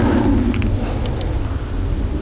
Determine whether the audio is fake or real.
real